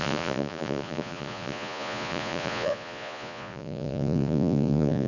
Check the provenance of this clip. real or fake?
fake